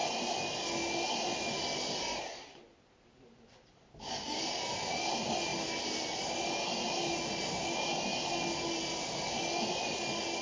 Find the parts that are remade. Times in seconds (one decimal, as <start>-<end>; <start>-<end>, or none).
none